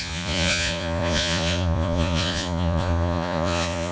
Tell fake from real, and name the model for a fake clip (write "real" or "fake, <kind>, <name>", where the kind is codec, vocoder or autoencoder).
fake, vocoder, Vocos